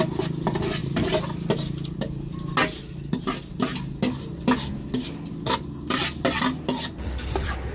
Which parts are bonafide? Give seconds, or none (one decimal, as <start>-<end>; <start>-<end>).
0.0-7.7